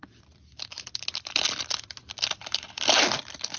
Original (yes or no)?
yes